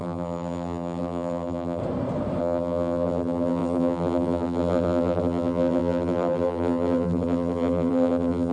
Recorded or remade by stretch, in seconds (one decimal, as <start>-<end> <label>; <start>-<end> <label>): 0.0-1.8 remade; 1.8-2.4 recorded; 2.4-8.5 remade